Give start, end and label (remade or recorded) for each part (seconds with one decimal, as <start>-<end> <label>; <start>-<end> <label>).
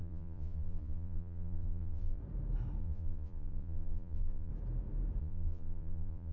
0.0-2.2 remade; 2.2-2.8 recorded; 2.8-4.5 remade; 4.5-5.2 recorded; 5.2-6.3 remade